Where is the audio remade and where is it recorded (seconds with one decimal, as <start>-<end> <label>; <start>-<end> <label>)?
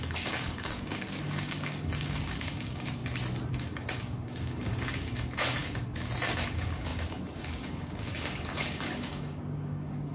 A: 0.0-3.0 remade; 3.0-3.5 recorded; 3.5-10.1 remade